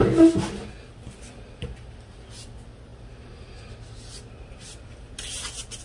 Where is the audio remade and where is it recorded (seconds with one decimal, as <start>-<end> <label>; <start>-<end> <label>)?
0.0-1.6 recorded; 1.6-2.3 remade; 2.3-2.9 recorded; 2.9-3.7 remade; 3.7-5.8 recorded